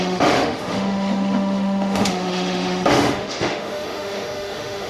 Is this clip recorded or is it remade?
remade